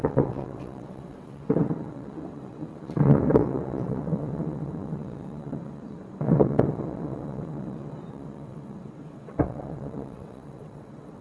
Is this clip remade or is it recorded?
remade